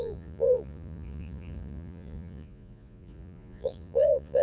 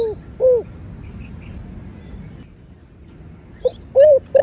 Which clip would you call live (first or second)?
second